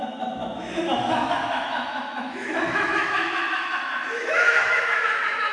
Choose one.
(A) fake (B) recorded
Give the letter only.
A